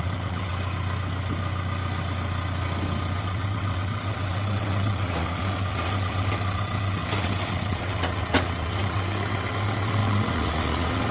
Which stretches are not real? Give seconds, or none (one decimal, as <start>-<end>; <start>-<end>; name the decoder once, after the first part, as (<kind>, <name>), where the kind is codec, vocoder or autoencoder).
0.0-0.5 (vocoder, WaveNeXt); 3.2-11.1